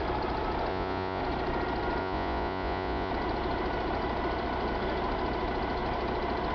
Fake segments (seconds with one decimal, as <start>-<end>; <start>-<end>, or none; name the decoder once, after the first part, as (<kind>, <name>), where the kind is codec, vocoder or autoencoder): 0.7-1.2 (vocoder, Vocos); 2.0-3.1